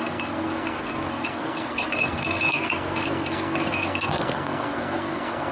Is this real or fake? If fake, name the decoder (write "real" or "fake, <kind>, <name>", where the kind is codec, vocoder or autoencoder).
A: fake, codec, SNAC